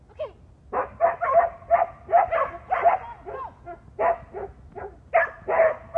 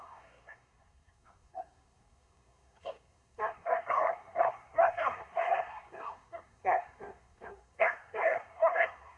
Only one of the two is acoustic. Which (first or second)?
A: first